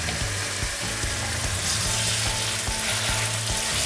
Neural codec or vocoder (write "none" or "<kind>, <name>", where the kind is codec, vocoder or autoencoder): none